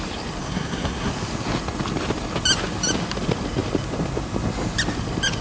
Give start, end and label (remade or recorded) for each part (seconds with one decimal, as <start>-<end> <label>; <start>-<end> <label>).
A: 0.0-0.4 recorded; 0.4-1.1 remade; 1.1-5.4 recorded